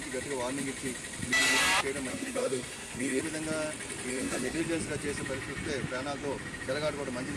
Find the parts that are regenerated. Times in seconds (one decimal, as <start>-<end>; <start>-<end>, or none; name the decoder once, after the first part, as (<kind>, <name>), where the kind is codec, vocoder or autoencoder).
2.1-3.2 (codec, SNAC); 4.1-4.6